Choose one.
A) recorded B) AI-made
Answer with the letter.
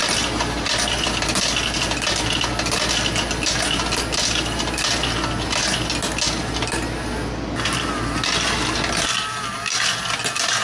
A